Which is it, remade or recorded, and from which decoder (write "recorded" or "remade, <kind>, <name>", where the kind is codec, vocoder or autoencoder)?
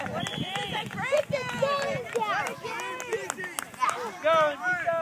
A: recorded